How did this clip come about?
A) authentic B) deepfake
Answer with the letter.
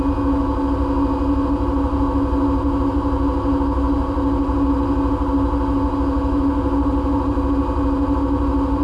A